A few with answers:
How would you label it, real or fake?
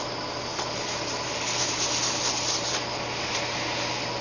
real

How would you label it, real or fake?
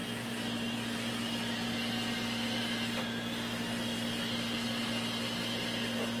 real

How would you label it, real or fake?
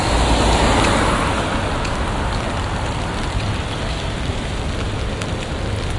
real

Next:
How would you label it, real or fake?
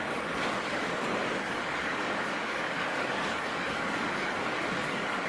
fake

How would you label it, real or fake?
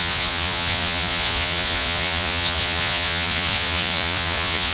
fake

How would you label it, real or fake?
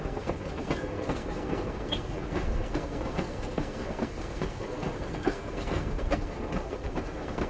fake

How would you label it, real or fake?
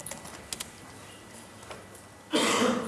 real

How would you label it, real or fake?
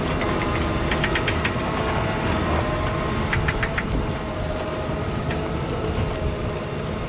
real